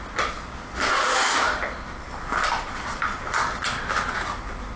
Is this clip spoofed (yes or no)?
no